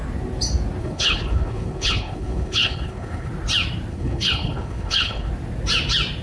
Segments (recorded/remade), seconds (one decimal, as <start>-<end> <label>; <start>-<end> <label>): 0.0-0.8 recorded; 0.8-3.3 remade; 3.3-3.9 recorded; 3.9-5.3 remade; 5.3-6.2 recorded